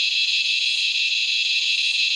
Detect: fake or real real